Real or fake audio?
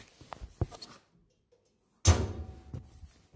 real